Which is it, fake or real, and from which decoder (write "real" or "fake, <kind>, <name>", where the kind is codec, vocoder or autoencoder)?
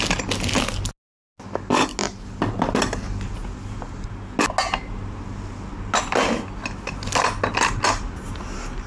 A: real